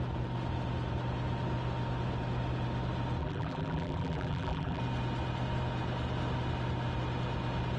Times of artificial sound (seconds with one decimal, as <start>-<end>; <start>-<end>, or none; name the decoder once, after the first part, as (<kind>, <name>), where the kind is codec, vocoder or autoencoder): 3.2-4.8 (vocoder, BigVGAN v2)